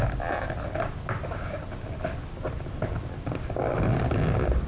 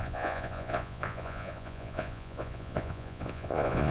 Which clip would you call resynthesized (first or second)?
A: second